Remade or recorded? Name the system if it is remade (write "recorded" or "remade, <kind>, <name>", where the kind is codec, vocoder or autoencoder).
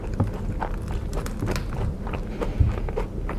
recorded